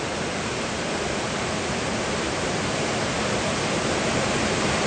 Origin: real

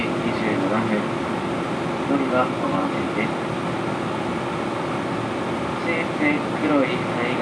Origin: real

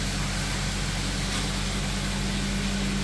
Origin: real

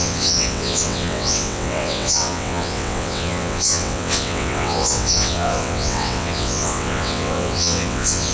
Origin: fake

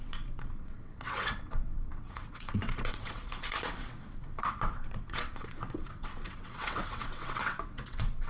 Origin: fake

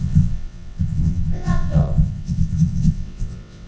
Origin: fake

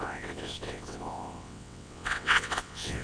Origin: fake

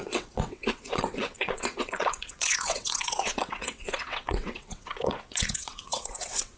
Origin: fake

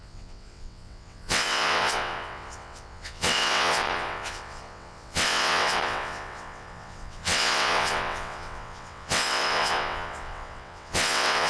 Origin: fake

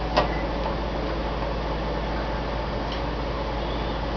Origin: real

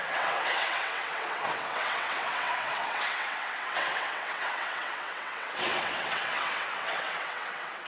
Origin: fake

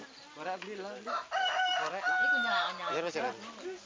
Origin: real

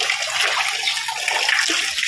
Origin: real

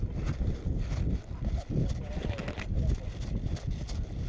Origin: real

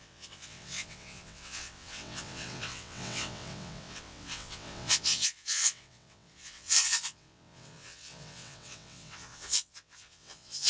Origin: fake